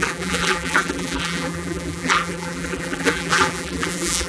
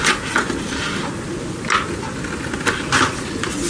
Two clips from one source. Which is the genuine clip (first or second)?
second